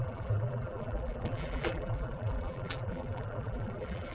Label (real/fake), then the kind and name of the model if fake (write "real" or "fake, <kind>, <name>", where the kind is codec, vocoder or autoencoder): fake, vocoder, BigVGAN v2